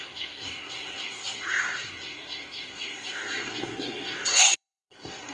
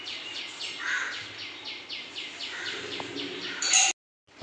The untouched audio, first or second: second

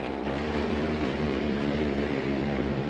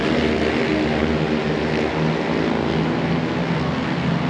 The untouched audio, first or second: second